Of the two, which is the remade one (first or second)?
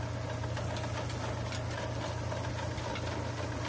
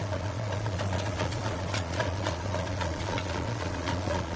second